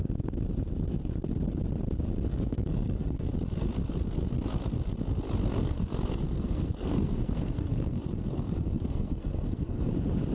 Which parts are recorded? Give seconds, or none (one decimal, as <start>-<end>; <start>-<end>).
0.0-2.3; 3.3-5.6; 9.9-10.3